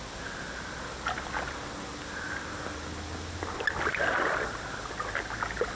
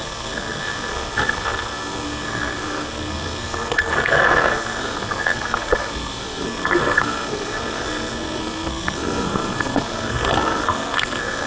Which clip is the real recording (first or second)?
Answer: first